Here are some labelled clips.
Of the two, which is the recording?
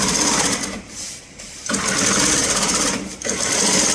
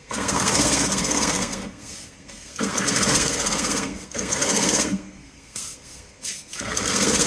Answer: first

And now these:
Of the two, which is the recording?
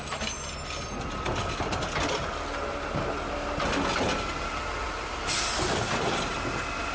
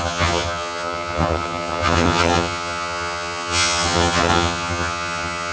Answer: first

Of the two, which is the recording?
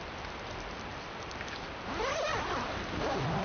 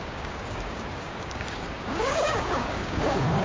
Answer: first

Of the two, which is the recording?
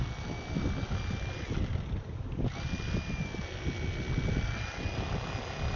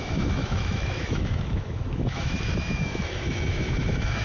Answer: first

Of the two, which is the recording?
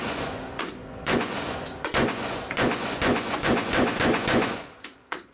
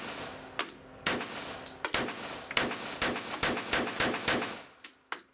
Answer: second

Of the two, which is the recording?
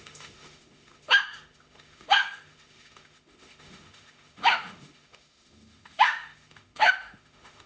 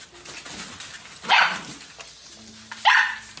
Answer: second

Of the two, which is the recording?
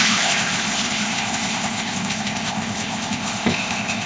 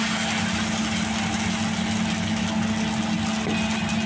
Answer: second